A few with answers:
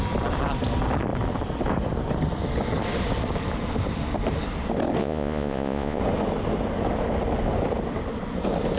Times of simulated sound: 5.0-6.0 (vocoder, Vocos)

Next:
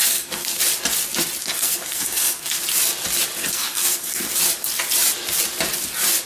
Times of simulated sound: 0.0-0.6 (codec, SNAC); 1.4-2.6; 3.4-4.4

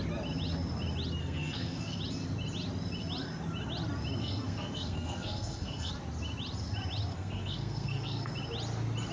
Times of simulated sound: 1.2-2.0 (codec, SNAC); 4.2-5.9; 7.1-8.3

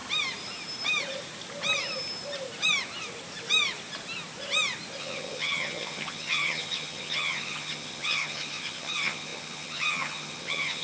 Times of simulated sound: 5.0-10.8 (vocoder, HiFi-GAN)